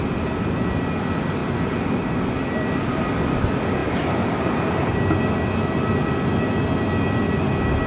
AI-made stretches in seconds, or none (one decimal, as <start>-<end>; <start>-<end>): none